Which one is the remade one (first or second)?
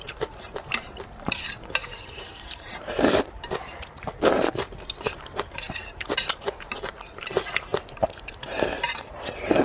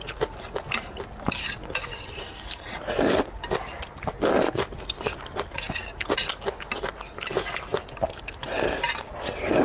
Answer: first